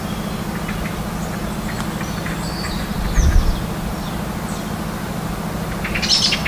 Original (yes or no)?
yes